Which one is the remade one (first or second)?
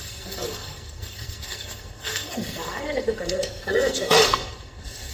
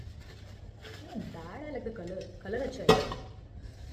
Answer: first